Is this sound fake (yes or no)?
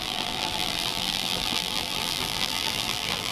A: yes